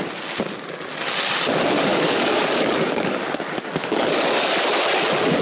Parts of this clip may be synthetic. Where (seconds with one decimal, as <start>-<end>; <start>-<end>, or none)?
1.9-3.4; 3.8-4.5